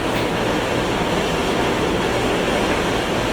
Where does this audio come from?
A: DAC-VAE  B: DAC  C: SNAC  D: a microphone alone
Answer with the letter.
D